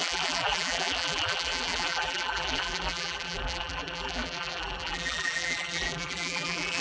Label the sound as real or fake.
fake